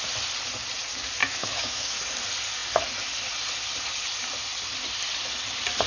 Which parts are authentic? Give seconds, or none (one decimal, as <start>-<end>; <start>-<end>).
0.0-1.2; 2.0-5.9